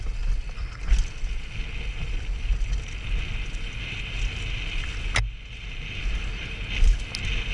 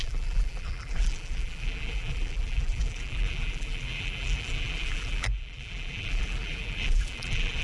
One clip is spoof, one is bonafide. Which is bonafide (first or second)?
first